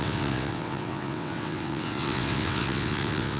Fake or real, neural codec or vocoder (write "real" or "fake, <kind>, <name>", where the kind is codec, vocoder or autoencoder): fake, vocoder, WaveNeXt